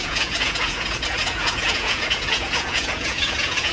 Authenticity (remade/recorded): remade